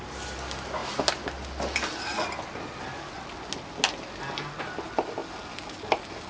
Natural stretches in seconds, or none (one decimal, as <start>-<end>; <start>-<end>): 0.0-6.3